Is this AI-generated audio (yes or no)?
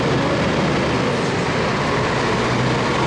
no